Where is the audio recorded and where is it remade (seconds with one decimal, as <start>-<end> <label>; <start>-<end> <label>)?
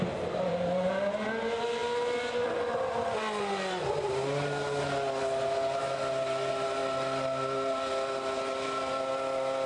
0.0-9.7 recorded